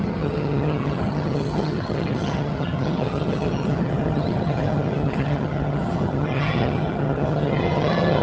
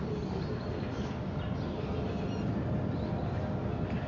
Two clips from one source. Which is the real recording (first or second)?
second